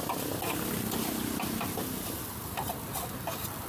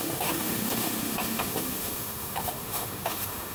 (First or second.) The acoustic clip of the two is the first